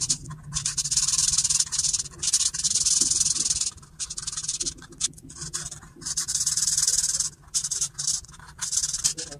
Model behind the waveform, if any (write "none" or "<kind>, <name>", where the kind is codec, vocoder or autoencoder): none